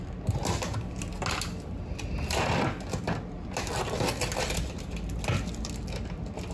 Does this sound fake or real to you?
real